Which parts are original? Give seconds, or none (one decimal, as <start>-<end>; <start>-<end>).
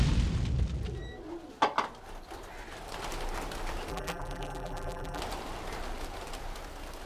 0.0-3.9; 5.2-7.1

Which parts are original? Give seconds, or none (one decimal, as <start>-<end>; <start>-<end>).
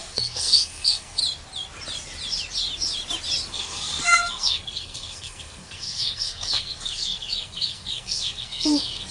1.2-3.5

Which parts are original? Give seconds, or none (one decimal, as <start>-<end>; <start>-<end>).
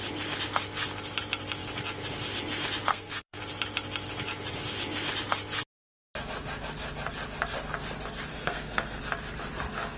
0.0-2.9; 3.4-8.3; 9.0-10.0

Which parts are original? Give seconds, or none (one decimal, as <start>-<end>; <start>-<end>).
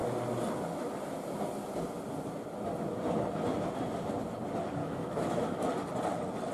0.0-4.8; 5.7-6.5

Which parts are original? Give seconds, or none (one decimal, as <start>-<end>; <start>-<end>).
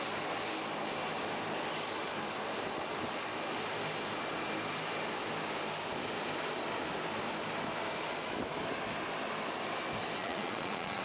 0.0-10.2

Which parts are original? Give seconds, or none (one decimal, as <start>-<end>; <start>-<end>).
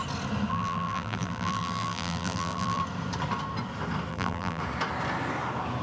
0.0-0.5; 2.8-4.1; 4.6-5.8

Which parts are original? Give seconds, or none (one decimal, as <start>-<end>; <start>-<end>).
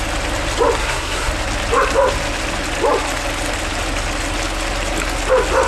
0.0-0.8; 1.3-5.7